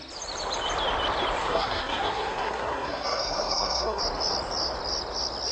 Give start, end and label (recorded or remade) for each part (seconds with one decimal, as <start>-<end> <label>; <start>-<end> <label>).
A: 0.0-1.4 recorded; 1.4-4.0 remade; 4.0-5.5 recorded